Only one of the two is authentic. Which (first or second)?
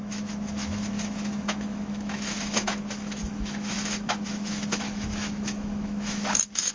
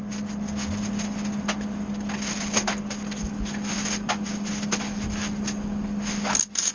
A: second